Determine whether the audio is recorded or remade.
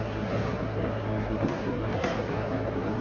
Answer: remade